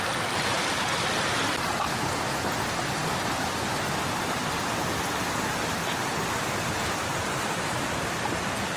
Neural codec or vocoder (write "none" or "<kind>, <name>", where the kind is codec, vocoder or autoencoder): none